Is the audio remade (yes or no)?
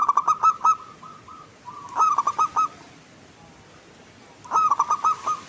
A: no